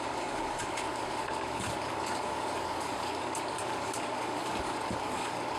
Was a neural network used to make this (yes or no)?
yes